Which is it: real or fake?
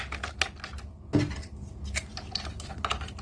real